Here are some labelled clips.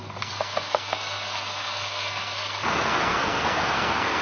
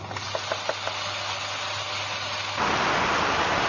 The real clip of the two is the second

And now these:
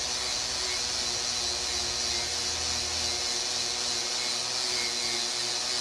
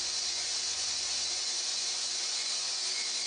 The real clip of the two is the first